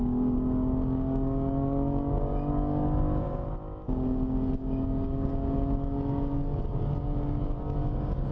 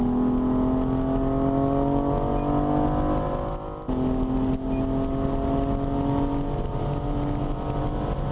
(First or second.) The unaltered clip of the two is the second